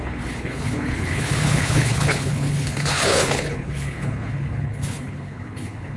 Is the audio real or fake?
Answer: fake